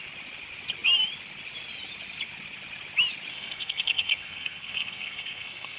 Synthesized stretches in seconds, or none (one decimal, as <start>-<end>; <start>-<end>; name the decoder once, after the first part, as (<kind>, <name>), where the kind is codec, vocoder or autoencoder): 3.3-5.8 (codec, SNAC)